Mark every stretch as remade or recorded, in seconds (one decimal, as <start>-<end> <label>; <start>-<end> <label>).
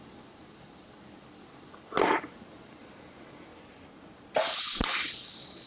0.0-5.7 recorded